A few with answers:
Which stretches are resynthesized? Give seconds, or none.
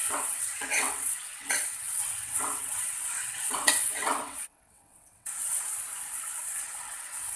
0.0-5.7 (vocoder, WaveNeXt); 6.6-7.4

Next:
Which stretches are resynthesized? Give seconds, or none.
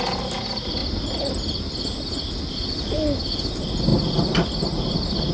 none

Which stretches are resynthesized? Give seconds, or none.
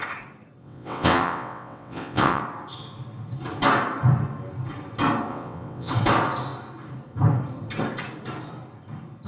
0.6-2.4 (vocoder, WaveNeXt); 5.3-5.9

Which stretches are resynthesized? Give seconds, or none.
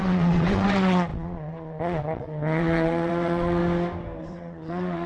0.0-3.6 (vocoder, WaveNeXt); 4.2-5.1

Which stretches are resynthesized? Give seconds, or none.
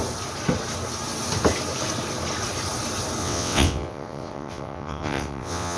3.2-5.8 (vocoder, WaveNeXt)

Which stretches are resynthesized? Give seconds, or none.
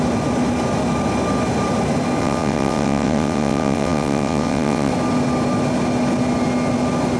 2.2-4.9 (vocoder, WaveNeXt)